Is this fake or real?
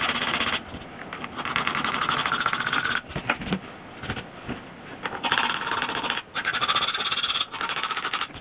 real